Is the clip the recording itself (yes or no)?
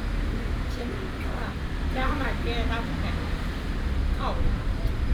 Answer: yes